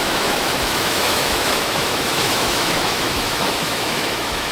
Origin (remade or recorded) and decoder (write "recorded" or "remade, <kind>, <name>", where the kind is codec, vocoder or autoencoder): remade, autoencoder, DAC-VAE